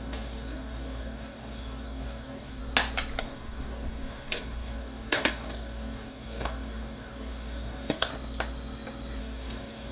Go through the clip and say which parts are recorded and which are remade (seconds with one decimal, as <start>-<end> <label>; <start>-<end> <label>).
0.0-2.6 remade; 2.6-3.2 recorded; 3.2-8.1 remade; 8.1-9.2 recorded; 9.2-9.9 remade